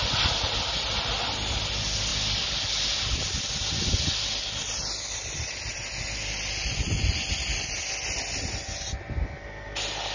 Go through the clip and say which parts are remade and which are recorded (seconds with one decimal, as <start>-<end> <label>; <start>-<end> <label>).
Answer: 0.0-10.1 recorded